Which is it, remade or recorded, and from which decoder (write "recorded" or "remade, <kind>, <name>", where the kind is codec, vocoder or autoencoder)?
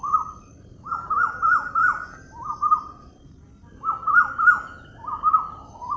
recorded